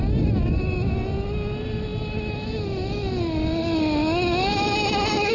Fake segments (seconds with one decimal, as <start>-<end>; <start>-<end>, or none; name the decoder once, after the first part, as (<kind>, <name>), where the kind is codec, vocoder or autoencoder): none